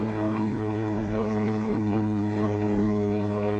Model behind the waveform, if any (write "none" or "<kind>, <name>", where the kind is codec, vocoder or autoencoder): codec, SNAC